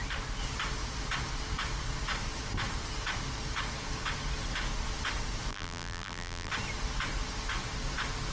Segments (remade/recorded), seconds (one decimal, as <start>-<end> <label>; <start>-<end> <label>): 0.0-5.5 recorded; 5.5-6.5 remade; 6.5-8.3 recorded